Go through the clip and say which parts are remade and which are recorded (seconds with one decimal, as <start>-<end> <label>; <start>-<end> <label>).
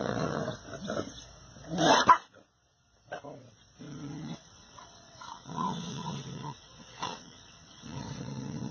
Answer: 0.0-0.4 remade; 0.4-3.8 recorded; 3.8-8.7 remade